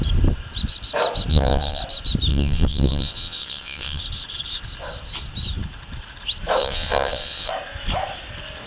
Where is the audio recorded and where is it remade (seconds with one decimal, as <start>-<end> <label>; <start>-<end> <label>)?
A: 0.0-1.3 recorded; 1.3-1.8 remade; 1.8-2.3 recorded; 2.3-4.0 remade; 4.0-6.6 recorded; 6.6-7.5 remade; 7.5-8.7 recorded